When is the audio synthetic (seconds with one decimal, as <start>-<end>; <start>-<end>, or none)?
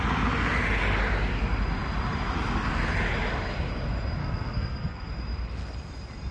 4.2-5.1